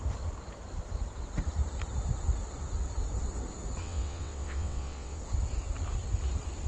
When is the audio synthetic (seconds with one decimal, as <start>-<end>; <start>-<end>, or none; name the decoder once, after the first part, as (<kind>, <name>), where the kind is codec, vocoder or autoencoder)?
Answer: 3.8-5.2 (vocoder, WaveNeXt)

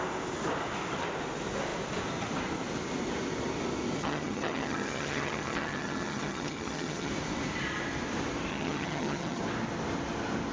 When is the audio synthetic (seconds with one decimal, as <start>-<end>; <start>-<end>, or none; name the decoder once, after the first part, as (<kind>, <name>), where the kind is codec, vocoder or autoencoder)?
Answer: 4.0-7.1 (vocoder, HiFi-GAN); 8.5-9.4

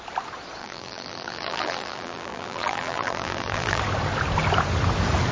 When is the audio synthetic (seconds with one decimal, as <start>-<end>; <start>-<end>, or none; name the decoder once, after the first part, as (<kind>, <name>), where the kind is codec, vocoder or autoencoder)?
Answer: 0.6-3.8 (vocoder, BigVGAN v2)

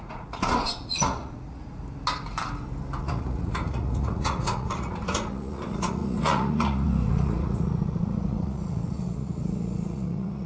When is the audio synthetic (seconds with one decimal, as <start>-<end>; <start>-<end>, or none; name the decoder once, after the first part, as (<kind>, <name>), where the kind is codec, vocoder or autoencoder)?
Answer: 0.0-1.8 (vocoder, Vocos); 3.0-10.5

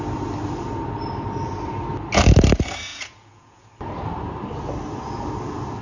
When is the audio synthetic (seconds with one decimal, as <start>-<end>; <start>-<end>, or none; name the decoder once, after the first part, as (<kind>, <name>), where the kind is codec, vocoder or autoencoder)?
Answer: 2.9-3.7 (vocoder, Vocos)

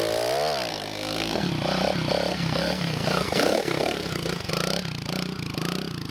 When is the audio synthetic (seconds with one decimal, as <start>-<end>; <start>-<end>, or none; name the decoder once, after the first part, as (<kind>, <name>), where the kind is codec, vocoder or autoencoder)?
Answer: 0.7-1.5 (codec, SNAC); 2.3-4.5

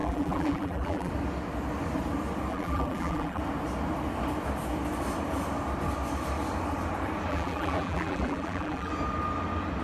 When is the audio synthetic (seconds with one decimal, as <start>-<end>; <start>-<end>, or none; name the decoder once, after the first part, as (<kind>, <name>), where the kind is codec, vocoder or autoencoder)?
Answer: 0.0-1.1 (vocoder, BigVGAN v2); 2.5-3.4; 7.3-8.9